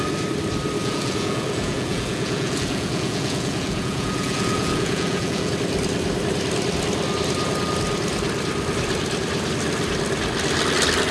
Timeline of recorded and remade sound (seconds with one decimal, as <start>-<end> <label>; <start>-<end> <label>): 0.0-0.8 recorded; 0.8-5.5 remade; 5.5-11.1 recorded